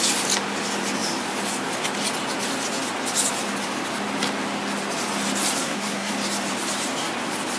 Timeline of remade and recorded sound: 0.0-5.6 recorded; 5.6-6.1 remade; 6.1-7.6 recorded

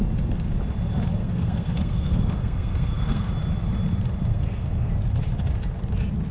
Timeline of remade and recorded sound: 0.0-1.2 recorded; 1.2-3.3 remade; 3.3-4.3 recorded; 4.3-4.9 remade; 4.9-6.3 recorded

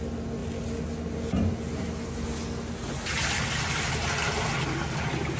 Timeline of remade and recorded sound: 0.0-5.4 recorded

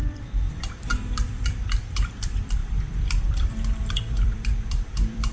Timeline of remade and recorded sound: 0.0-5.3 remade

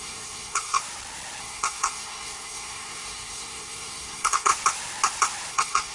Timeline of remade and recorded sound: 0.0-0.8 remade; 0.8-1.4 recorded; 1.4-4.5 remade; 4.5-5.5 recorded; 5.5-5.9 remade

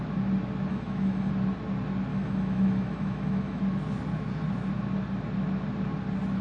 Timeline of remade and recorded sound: 0.0-0.7 recorded; 0.7-1.3 remade; 1.3-2.1 recorded; 2.1-3.6 remade; 3.6-6.4 recorded

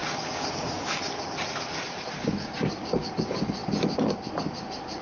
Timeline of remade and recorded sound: 0.0-1.0 remade; 1.0-2.2 recorded; 2.2-3.1 remade; 3.1-5.0 recorded

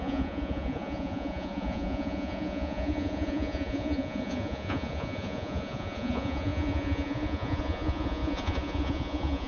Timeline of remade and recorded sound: 0.0-9.5 remade